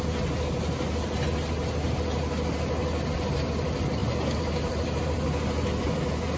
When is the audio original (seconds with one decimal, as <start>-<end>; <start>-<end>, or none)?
0.0-6.4